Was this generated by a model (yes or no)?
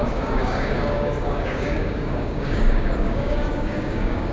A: yes